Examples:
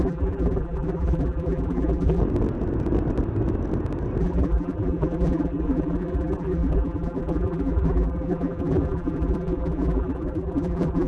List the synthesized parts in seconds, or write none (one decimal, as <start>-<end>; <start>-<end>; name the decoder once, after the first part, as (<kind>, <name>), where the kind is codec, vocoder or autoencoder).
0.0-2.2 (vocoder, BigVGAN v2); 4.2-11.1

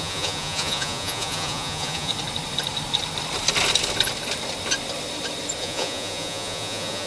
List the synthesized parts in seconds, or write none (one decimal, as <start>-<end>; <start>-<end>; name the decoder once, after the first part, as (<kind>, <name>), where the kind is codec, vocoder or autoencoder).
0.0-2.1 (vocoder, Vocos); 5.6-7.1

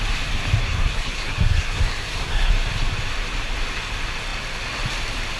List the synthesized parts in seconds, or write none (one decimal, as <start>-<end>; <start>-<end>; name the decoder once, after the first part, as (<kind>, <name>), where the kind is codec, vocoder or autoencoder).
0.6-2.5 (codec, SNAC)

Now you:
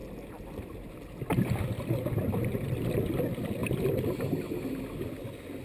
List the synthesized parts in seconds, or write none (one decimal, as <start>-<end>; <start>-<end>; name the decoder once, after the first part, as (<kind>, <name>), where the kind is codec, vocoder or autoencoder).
3.6-4.2 (vocoder, BigVGAN v2)

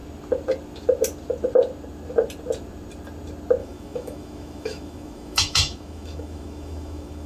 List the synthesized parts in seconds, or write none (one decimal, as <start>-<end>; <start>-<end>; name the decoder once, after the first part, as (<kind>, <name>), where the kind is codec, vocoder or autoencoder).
3.6-7.3 (autoencoder, DAC-VAE)

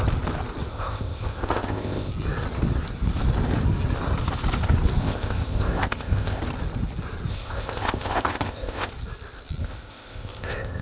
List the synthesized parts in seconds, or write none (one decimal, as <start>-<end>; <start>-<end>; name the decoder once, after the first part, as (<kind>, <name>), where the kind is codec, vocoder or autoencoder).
0.7-2.1 (codec, ZipCodec); 5.0-6.4; 7.3-8.9; 9.6-10.8

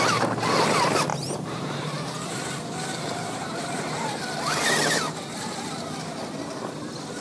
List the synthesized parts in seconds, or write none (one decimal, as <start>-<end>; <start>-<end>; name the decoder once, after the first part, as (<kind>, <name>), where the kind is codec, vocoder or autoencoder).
1.1-4.2 (vocoder, BigVGAN v2)

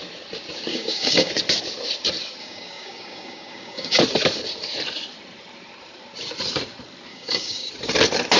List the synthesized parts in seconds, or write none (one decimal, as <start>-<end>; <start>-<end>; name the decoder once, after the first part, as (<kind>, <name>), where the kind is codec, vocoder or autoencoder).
0.7-1.3 (codec, DAC); 2.4-4.0; 7.1-7.7